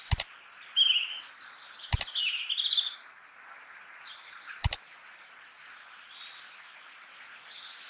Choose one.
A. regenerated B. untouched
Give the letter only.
B